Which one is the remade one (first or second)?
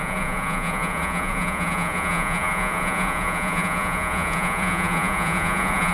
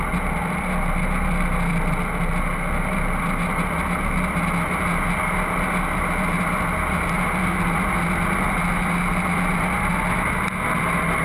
first